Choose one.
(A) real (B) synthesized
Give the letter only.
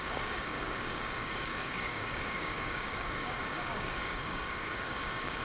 B